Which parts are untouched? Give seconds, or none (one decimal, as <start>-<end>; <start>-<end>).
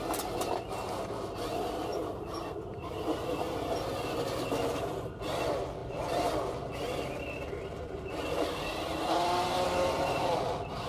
0.0-1.9; 3.0-10.9